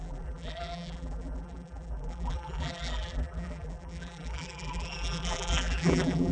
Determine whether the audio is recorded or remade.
remade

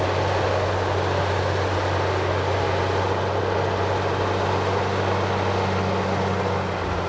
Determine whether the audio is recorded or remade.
recorded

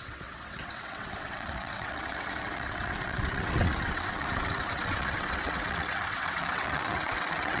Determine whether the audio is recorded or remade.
remade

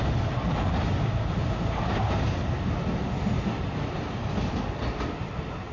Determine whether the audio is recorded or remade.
recorded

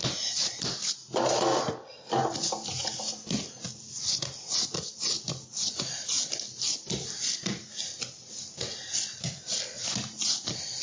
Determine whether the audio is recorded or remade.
recorded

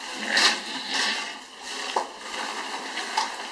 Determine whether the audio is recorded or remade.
recorded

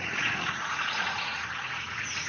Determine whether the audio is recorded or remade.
remade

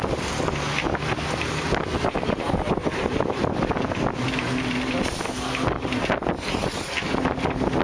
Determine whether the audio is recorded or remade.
recorded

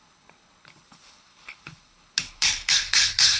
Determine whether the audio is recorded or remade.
remade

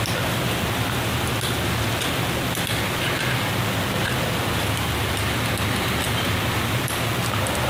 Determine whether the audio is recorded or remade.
recorded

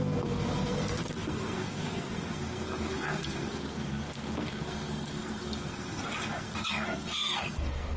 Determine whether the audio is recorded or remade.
remade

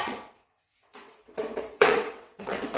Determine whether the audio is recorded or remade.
remade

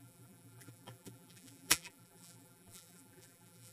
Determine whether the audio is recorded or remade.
remade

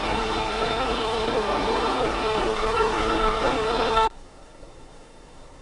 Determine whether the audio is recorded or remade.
remade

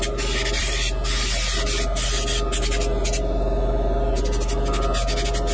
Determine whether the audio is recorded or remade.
recorded